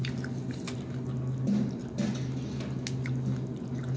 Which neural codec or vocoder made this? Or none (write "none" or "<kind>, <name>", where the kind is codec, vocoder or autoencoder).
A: none